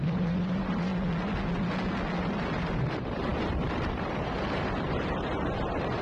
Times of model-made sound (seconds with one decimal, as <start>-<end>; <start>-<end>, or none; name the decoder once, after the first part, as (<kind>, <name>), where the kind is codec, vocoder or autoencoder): 0.0-0.9 (vocoder, BigVGAN v2); 2.2-6.0